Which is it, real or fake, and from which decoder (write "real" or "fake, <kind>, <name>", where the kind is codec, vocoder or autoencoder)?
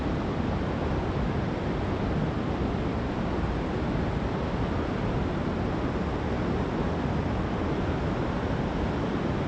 real